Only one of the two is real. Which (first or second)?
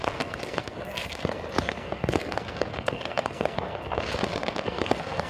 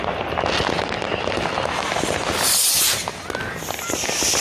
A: second